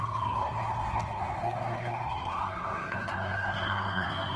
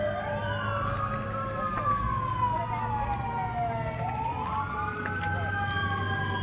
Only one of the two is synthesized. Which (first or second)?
first